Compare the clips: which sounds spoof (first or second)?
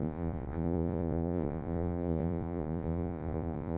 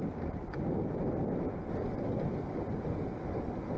first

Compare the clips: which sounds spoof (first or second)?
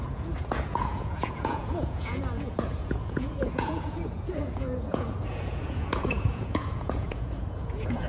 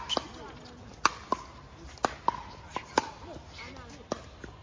first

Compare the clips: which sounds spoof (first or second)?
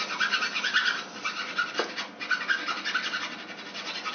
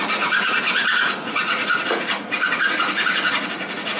second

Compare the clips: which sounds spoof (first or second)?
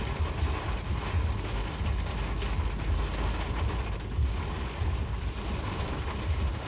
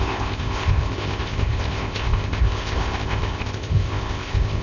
second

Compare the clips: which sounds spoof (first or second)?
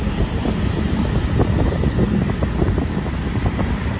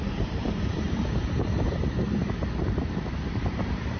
second